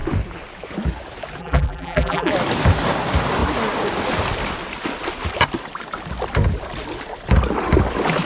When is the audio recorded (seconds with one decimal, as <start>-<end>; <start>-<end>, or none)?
0.0-1.4; 2.3-8.3